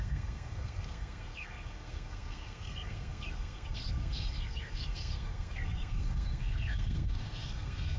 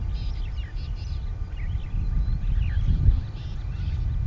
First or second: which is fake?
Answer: first